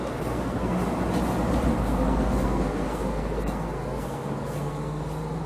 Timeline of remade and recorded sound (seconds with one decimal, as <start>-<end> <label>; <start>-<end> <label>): 0.0-0.8 remade; 0.8-1.7 recorded; 1.7-5.0 remade; 5.0-5.5 recorded